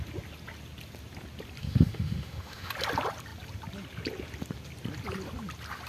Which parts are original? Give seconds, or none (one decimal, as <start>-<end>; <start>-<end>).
0.0-1.6; 2.7-5.9

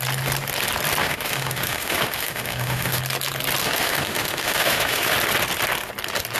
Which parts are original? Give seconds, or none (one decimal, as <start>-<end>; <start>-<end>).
0.0-1.0; 3.0-3.6; 5.1-6.4

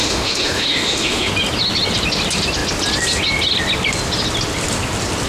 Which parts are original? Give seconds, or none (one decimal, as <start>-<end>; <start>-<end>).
1.3-5.3